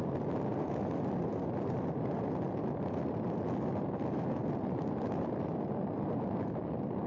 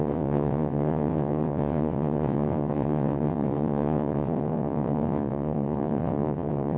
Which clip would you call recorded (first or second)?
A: first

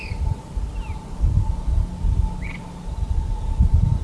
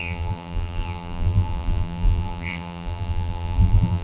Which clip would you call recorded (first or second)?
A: first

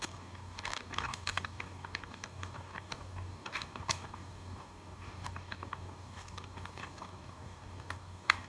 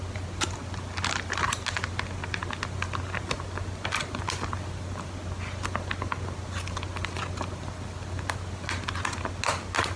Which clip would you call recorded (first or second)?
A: second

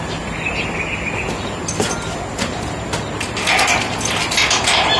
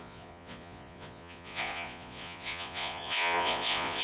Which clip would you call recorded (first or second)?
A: first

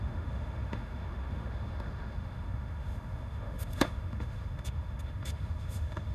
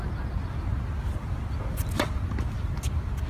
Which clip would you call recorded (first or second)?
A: second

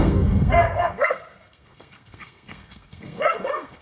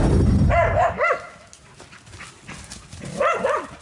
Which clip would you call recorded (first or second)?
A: second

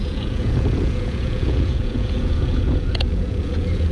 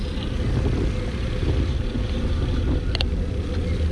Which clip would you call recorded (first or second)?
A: second